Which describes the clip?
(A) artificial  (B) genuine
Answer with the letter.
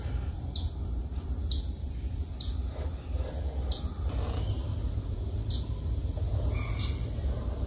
B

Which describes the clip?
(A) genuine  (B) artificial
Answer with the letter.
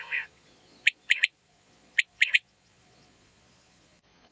B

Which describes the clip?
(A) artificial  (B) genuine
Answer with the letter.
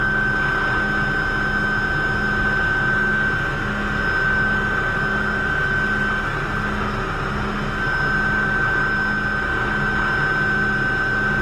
B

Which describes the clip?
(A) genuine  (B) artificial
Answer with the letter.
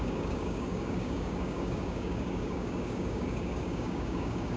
B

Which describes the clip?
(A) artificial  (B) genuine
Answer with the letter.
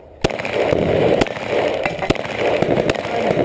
B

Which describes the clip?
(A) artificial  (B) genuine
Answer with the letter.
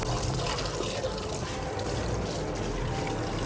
B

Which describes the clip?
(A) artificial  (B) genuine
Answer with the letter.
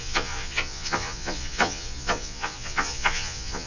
A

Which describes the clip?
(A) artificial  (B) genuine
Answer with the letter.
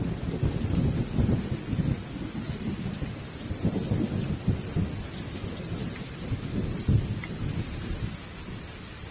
B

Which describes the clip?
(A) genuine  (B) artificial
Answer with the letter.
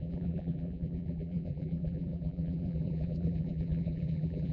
B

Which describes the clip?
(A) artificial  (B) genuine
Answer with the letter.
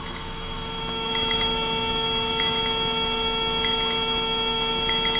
A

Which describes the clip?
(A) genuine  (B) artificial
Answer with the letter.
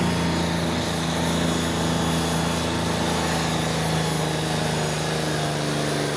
A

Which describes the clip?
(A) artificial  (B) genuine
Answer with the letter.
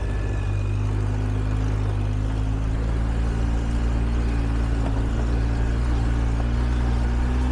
B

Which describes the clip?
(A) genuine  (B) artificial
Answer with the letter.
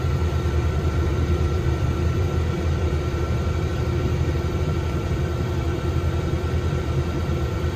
B